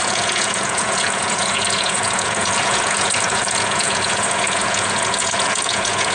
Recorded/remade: remade